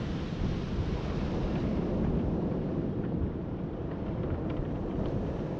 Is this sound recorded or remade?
remade